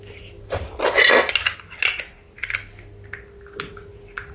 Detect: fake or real real